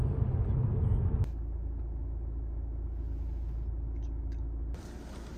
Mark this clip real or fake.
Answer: real